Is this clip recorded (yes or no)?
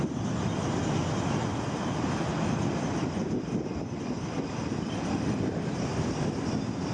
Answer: yes